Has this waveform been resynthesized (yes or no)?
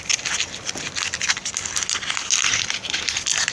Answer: no